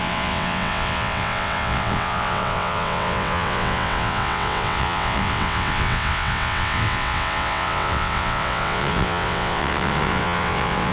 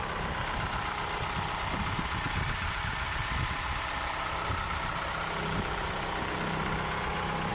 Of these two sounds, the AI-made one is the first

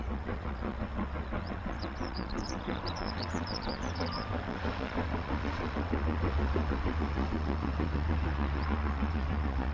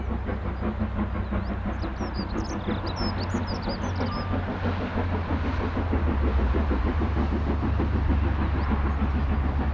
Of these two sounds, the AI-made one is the first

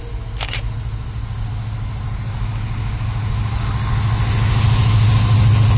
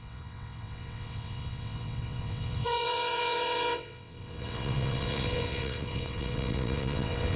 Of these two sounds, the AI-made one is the second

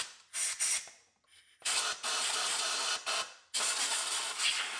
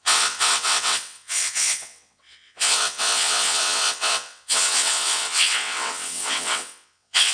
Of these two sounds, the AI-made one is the second